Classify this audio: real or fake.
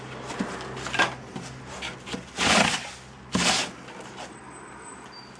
real